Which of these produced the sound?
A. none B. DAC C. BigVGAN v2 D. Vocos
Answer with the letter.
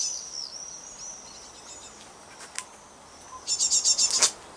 A